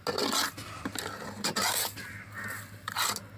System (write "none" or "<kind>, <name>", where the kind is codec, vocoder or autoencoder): none